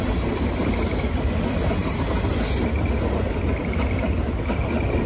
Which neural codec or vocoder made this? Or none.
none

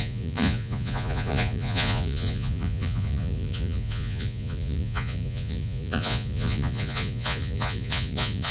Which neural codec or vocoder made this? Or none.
vocoder, Vocos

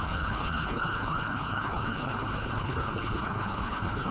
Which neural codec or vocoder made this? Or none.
codec, HILCodec